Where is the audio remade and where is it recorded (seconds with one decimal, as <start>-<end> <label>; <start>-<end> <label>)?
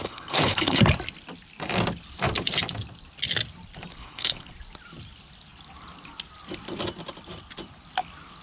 0.0-0.8 remade; 0.8-4.0 recorded; 4.0-4.5 remade; 4.5-8.4 recorded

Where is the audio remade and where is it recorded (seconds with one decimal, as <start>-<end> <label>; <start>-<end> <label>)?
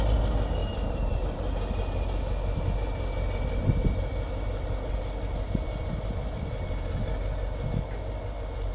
0.0-0.6 recorded; 0.6-1.2 remade; 1.2-8.7 recorded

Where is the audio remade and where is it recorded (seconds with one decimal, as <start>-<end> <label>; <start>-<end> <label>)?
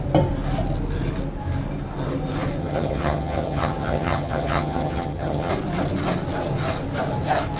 0.0-2.6 recorded; 2.6-5.5 remade; 5.5-7.6 recorded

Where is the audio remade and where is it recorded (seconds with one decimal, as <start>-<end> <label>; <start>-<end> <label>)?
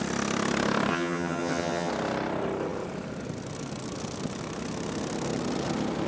0.0-0.9 recorded; 0.9-1.9 remade; 1.9-6.1 recorded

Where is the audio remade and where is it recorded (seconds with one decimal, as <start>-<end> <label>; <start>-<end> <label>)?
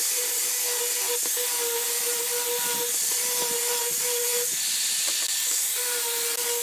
0.0-6.6 recorded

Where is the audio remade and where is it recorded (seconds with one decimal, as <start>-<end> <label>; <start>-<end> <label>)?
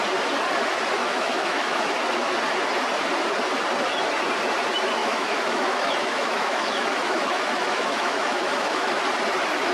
0.0-1.0 recorded; 1.0-1.9 remade; 1.9-5.0 recorded; 5.0-9.0 remade; 9.0-9.7 recorded